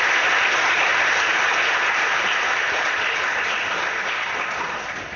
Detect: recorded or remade recorded